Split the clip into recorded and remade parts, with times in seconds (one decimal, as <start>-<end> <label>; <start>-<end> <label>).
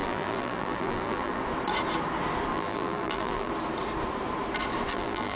0.0-1.4 remade; 1.4-2.5 recorded; 2.5-3.5 remade; 3.5-4.9 recorded; 4.9-5.4 remade